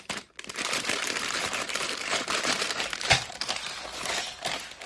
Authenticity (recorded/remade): remade